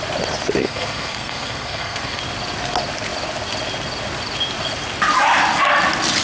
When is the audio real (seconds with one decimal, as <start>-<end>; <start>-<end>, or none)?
0.0-0.6; 2.2-6.2